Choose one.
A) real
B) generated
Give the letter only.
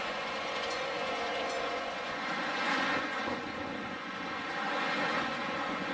B